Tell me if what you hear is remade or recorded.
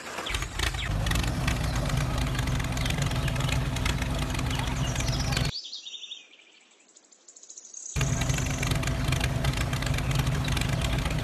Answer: recorded